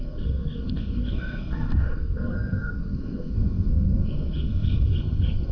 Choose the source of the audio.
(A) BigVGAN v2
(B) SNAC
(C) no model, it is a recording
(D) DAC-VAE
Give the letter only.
B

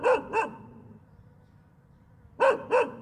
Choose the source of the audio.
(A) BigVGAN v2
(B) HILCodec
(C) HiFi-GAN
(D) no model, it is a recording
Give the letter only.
A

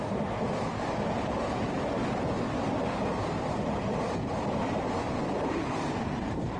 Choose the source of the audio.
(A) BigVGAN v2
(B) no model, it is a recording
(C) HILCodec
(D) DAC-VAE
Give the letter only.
A